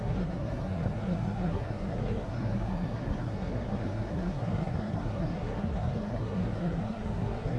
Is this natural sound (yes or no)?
no